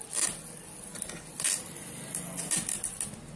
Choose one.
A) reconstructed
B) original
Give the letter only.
B